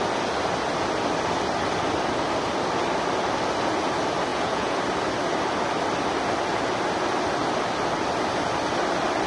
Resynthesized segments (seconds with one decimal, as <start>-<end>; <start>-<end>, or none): 4.3-4.8